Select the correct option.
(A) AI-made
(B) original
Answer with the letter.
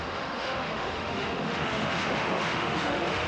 A